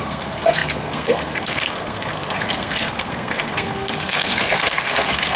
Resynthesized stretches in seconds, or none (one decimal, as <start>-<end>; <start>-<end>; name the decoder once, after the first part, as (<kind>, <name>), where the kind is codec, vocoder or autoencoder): 0.0-5.4 (codec, SNAC)